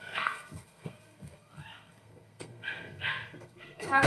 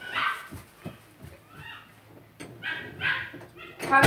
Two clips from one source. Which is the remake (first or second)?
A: first